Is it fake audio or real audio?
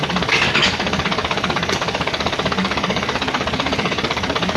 fake